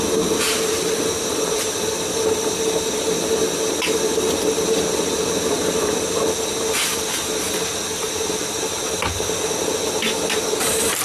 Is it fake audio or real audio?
real